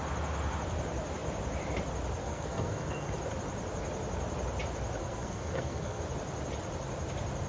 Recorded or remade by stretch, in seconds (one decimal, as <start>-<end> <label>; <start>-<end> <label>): 0.0-2.2 recorded; 2.2-3.1 remade; 3.1-5.0 recorded; 5.0-6.0 remade; 6.0-7.5 recorded